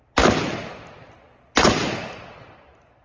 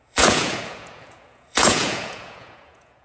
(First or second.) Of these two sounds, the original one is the first